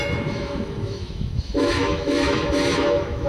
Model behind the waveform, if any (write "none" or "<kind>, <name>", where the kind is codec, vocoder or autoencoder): autoencoder, DAC-VAE